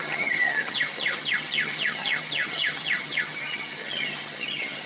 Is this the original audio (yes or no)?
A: no